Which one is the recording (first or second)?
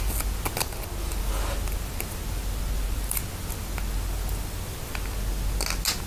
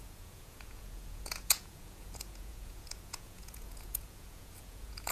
first